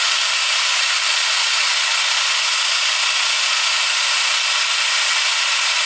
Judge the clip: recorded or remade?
recorded